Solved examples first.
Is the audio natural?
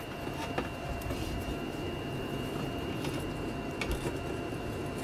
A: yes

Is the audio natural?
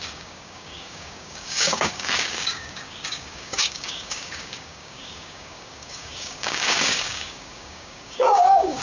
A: no